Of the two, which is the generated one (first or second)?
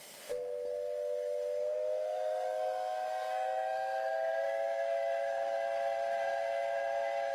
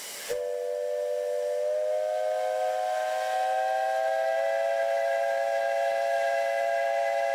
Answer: first